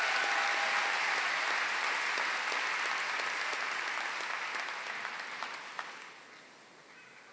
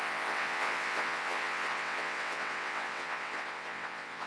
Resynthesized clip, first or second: second